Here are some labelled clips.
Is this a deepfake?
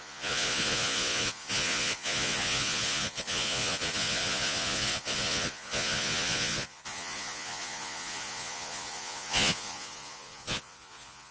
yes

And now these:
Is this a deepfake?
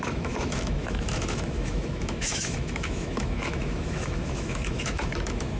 yes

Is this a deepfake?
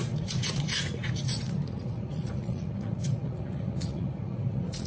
yes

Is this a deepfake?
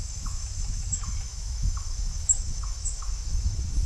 yes